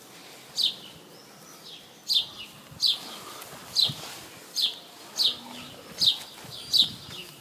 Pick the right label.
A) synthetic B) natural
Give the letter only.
B